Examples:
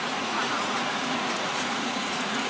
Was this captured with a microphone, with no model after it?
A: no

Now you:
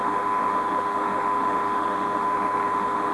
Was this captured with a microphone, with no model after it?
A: no